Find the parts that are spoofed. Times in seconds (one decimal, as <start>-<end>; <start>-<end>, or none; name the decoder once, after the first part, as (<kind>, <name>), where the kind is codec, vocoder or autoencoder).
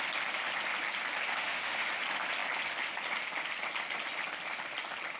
1.3-1.9 (autoencoder, DAC-VAE)